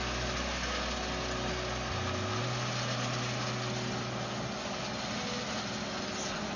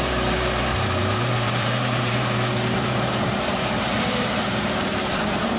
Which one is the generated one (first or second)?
second